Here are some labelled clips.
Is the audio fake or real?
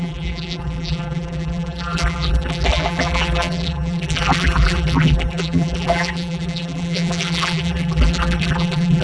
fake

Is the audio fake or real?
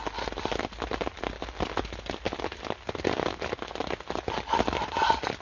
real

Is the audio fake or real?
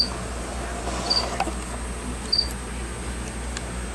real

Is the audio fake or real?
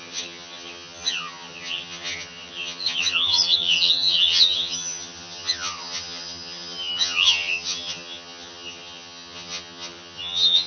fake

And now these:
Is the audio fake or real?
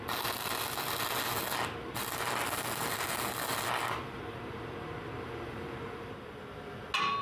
real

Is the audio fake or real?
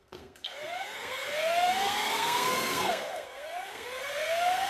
fake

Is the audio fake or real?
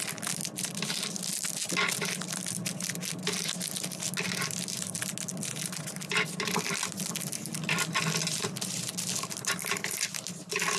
real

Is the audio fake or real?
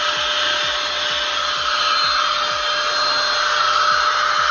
real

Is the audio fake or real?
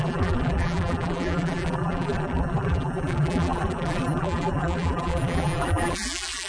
fake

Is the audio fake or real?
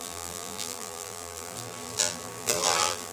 fake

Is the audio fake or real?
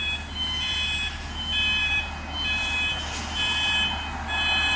fake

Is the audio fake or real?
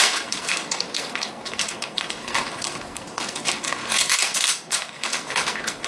fake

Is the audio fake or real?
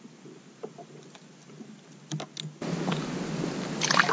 real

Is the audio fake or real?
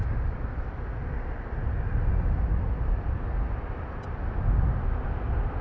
real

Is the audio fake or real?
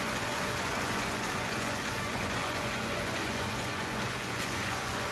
fake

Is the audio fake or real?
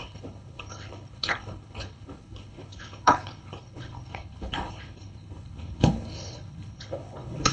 fake